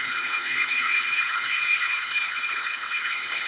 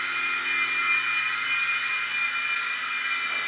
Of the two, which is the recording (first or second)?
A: second